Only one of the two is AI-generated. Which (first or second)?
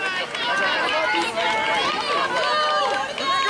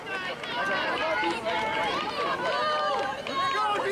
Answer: second